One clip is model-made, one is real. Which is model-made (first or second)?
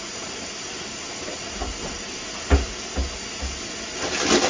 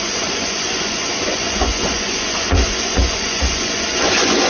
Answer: second